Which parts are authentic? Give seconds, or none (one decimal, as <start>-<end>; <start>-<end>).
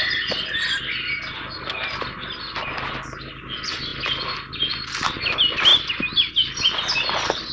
0.0-7.5